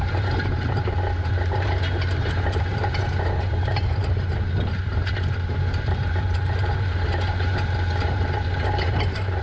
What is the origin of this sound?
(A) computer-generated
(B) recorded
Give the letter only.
A